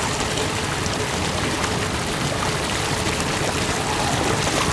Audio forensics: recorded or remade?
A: recorded